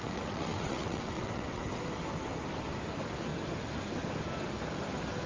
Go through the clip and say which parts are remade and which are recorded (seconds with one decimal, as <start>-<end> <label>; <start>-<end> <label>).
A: 0.0-1.6 remade; 1.6-5.3 recorded